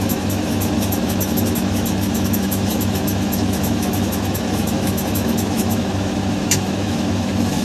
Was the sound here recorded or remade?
remade